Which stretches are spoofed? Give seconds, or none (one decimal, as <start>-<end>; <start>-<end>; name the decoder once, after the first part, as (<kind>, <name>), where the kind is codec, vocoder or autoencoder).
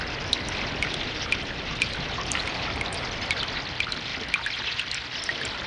0.0-4.1 (vocoder, BigVGAN v2); 4.7-5.7